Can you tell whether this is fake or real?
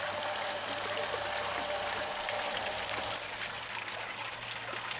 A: real